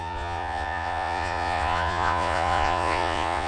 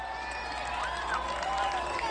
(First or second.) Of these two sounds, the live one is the second